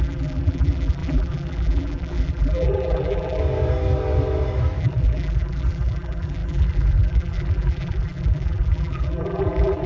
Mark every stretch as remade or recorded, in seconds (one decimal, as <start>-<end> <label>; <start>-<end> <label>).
0.0-3.4 remade; 3.4-4.8 recorded; 4.8-9.9 remade